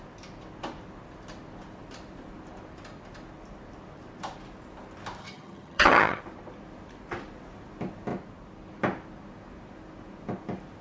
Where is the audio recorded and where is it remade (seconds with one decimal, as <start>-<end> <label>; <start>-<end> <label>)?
0.0-5.2 recorded; 5.2-6.2 remade; 6.2-10.8 recorded